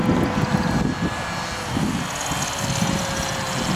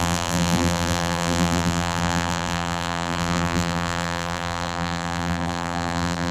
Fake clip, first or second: second